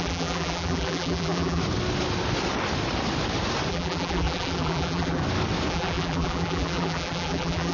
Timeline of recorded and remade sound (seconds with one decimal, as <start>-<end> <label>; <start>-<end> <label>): 0.0-1.6 remade; 1.6-3.7 recorded; 3.7-5.2 remade; 5.2-5.7 recorded; 5.7-7.7 remade